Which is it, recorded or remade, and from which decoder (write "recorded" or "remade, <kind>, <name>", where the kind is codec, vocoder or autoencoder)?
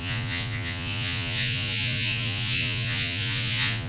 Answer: remade, vocoder, Vocos